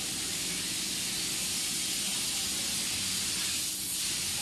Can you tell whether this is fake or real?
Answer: real